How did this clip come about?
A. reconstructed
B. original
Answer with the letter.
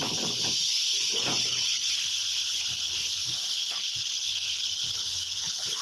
A